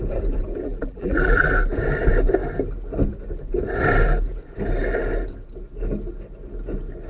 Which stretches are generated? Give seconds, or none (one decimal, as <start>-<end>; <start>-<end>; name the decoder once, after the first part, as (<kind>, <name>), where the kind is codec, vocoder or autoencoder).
0.6-1.5 (vocoder, BigVGAN v2)